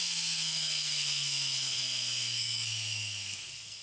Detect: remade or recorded remade